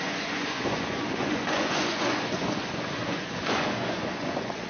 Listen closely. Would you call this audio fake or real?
fake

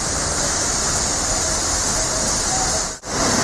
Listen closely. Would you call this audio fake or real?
real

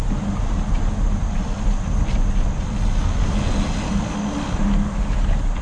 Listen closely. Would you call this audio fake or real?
real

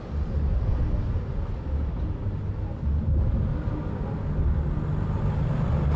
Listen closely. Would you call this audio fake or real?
real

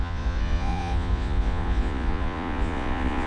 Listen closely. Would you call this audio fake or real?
fake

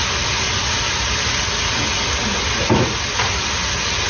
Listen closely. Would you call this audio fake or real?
real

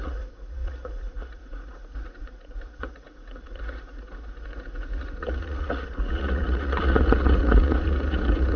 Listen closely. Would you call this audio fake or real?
fake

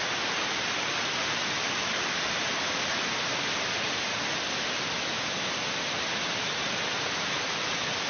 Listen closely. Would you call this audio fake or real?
real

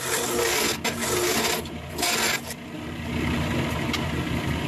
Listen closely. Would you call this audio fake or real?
real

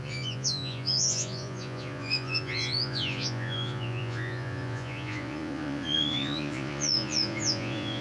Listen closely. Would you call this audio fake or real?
fake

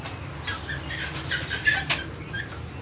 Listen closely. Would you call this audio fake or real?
real